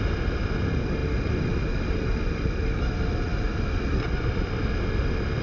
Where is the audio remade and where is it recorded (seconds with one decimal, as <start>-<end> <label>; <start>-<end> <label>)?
0.0-5.4 recorded